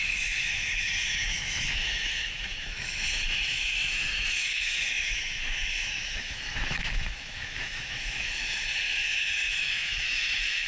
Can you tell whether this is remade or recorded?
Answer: remade